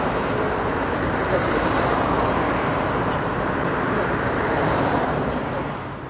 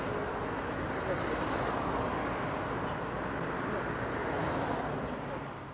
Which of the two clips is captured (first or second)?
second